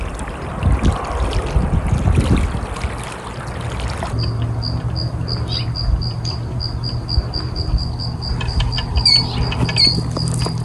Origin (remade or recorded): recorded